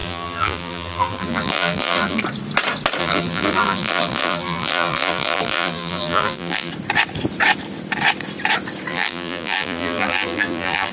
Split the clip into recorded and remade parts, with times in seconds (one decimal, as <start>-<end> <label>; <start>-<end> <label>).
0.0-2.2 remade; 2.2-3.0 recorded; 3.0-6.7 remade; 6.7-8.9 recorded; 8.9-10.9 remade